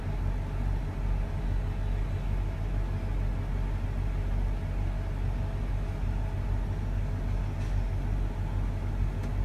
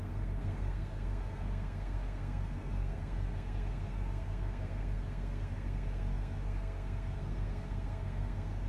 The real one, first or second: first